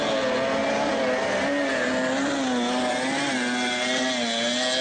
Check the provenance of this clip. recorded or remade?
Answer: recorded